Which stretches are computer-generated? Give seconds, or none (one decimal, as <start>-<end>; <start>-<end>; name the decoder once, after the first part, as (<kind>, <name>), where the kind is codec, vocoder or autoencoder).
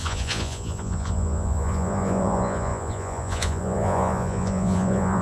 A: 0.0-5.2 (vocoder, Vocos)